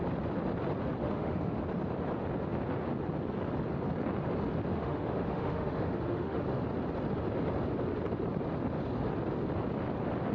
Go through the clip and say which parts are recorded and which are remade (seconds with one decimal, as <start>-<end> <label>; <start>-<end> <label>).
0.0-1.0 recorded; 1.0-1.6 remade; 1.6-4.7 recorded; 4.7-6.4 remade; 6.4-10.3 recorded